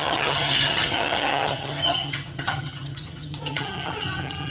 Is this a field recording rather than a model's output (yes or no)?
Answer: no